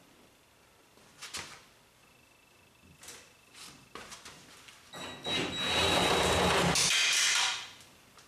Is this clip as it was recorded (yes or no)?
yes